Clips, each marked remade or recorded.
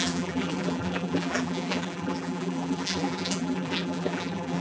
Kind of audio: remade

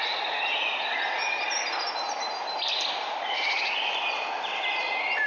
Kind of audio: recorded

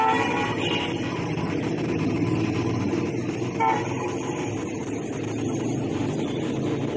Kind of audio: recorded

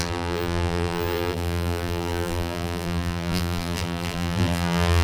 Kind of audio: remade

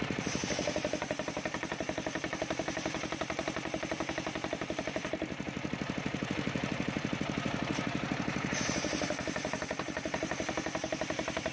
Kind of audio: remade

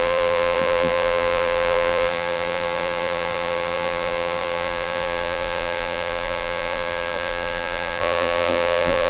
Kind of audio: remade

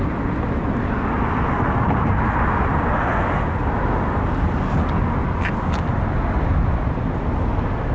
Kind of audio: recorded